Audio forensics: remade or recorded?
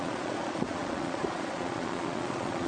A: remade